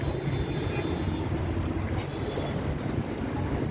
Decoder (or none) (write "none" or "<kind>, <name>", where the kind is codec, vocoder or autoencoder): none